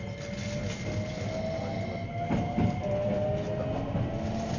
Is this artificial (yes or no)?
no